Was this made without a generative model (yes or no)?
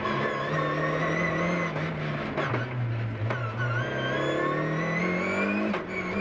yes